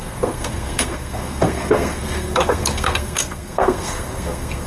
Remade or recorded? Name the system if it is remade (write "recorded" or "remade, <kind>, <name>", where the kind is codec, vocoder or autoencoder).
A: remade, codec, SNAC